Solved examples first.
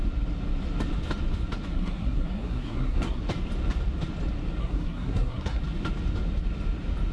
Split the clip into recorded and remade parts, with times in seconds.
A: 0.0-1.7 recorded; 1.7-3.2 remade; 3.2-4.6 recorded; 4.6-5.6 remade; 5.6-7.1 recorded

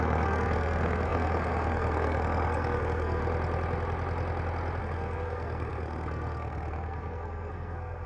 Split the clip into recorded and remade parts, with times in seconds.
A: 0.0-3.2 remade; 3.2-4.8 recorded; 4.8-8.1 remade